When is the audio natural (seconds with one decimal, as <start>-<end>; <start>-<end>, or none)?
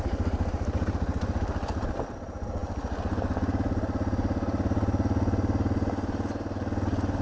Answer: 0.0-7.2